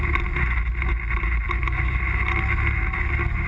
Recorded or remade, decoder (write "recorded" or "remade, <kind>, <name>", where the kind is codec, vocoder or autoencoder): recorded